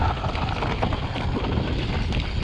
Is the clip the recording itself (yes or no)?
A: yes